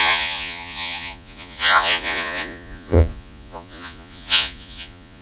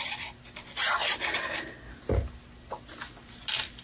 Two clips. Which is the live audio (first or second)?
second